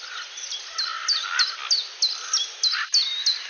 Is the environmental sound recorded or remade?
recorded